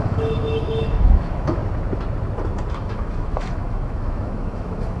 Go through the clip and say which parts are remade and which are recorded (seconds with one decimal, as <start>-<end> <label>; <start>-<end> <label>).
0.0-1.6 remade; 1.6-2.7 recorded; 2.7-5.0 remade